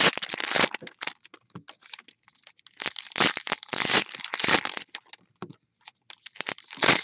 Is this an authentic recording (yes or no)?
yes